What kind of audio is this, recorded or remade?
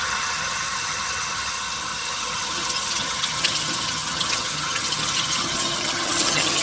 remade